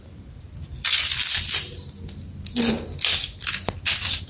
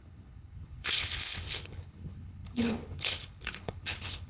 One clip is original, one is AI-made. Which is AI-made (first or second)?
second